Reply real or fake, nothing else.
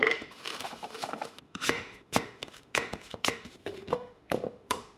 fake